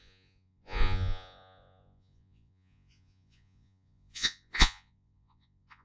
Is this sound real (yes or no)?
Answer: no